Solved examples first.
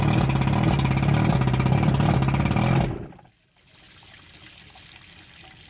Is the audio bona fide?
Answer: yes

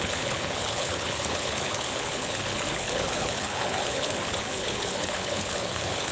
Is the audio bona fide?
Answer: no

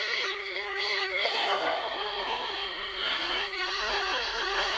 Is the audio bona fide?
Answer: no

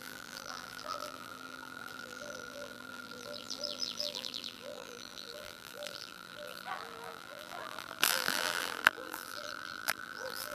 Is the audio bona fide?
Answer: no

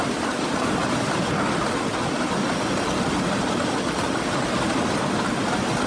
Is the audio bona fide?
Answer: yes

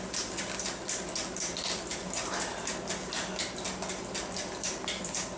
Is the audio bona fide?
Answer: yes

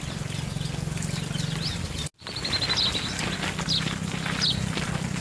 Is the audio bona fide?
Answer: yes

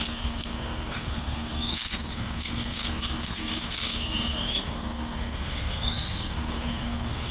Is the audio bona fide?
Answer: no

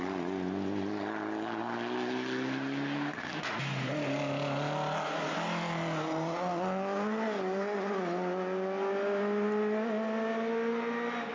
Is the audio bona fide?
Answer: yes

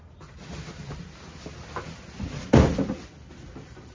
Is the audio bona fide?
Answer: yes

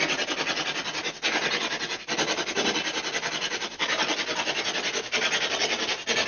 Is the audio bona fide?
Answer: yes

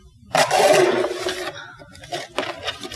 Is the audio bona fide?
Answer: yes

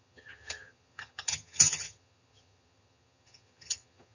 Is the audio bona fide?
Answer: no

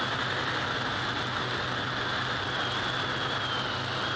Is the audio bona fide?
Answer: yes